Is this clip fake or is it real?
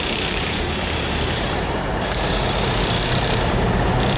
fake